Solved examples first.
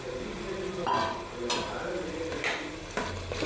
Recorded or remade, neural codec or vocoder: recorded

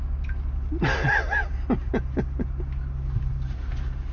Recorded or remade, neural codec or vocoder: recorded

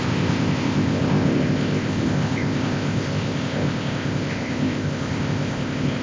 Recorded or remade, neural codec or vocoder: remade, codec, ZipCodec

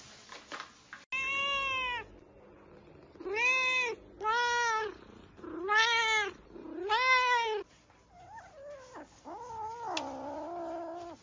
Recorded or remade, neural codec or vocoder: recorded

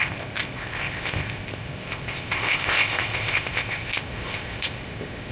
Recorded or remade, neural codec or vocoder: remade, codec, ZipCodec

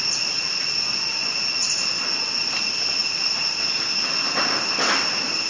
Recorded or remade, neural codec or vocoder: recorded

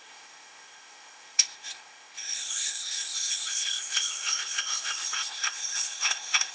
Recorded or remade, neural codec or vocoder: remade, codec, ZipCodec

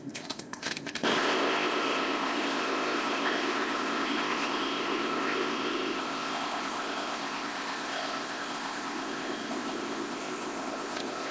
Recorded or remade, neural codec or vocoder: remade, codec, ZipCodec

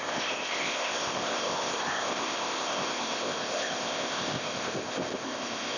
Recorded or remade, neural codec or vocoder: remade, codec, ZipCodec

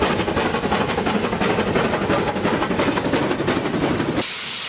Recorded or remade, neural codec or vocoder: recorded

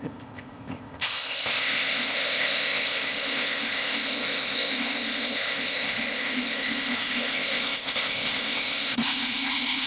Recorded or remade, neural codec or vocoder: remade, codec, ZipCodec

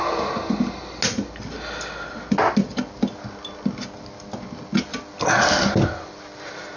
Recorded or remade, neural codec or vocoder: recorded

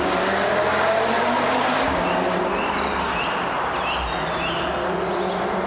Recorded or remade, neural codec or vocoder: recorded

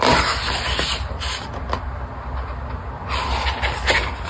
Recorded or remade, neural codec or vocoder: recorded